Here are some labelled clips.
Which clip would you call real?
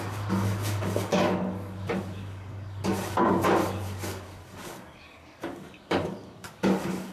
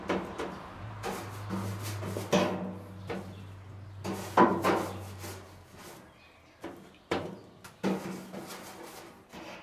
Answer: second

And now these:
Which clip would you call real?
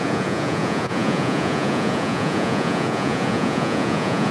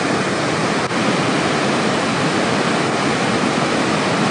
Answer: second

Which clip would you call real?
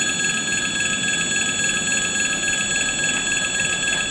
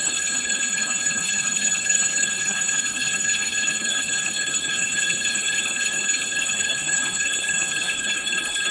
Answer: first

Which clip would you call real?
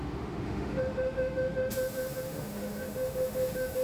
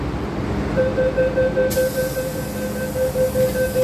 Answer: second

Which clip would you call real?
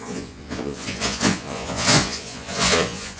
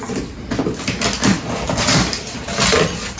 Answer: second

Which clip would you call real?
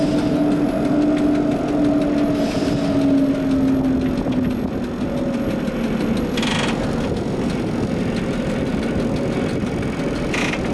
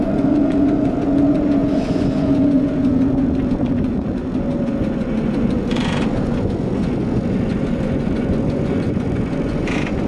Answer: first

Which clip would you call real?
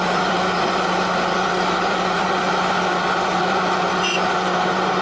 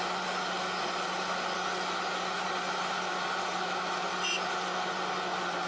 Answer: second